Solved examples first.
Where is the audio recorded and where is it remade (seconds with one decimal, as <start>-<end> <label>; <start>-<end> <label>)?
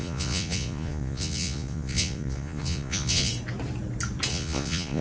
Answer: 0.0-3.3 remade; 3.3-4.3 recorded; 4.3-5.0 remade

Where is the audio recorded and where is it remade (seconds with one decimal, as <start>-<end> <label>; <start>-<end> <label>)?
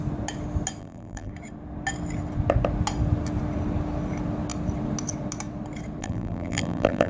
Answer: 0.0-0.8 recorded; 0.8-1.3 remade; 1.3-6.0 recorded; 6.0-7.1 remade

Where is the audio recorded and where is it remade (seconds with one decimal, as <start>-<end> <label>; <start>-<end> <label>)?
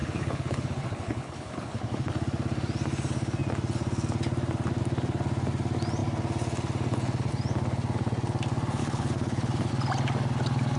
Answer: 0.0-2.1 remade; 2.1-8.8 recorded; 8.8-9.7 remade; 9.7-10.8 recorded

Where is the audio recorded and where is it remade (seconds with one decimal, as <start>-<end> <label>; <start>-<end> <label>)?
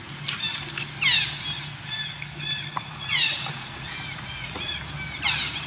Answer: 0.0-3.0 recorded; 3.0-4.8 remade; 4.8-5.7 recorded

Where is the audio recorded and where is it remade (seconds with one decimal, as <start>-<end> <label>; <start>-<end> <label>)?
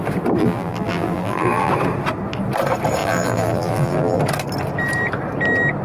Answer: 0.0-0.4 recorded; 0.4-1.7 remade; 1.7-3.0 recorded; 3.0-4.2 remade; 4.2-5.8 recorded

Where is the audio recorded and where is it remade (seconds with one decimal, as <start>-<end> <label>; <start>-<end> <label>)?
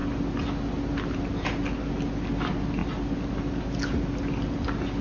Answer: 0.0-5.0 recorded